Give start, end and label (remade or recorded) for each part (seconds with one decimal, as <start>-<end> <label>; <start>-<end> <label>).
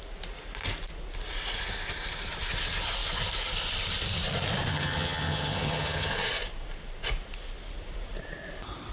0.0-4.7 recorded; 4.7-6.1 remade; 6.1-8.9 recorded